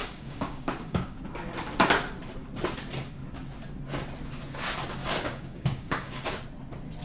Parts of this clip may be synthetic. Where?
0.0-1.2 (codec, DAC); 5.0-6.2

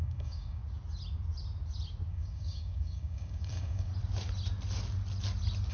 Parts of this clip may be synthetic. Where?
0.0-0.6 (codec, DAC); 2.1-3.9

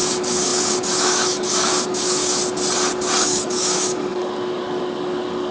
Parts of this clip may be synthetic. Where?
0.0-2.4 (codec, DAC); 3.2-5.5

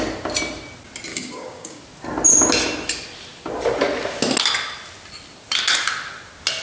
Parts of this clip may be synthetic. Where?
1.1-1.8 (codec, DAC)